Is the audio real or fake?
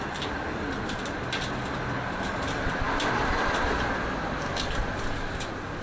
fake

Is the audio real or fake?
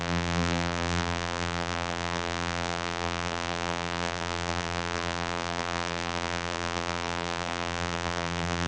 fake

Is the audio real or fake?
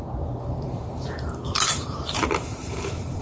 fake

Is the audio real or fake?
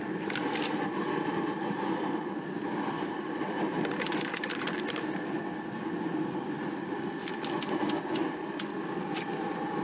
real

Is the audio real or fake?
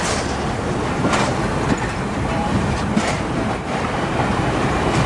fake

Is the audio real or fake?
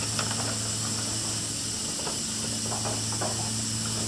real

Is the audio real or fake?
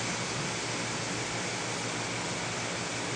real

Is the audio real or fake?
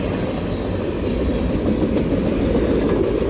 real